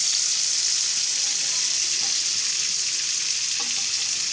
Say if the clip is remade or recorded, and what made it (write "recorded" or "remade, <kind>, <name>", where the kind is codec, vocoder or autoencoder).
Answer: recorded